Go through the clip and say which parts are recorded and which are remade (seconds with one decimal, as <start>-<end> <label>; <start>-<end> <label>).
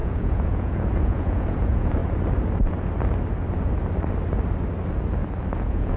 0.0-2.0 remade; 2.0-5.6 recorded; 5.6-6.0 remade